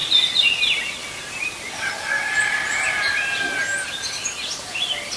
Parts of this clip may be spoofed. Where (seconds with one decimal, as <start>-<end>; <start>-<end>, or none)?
none